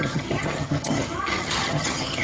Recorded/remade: remade